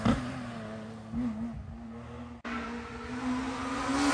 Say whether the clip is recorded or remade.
recorded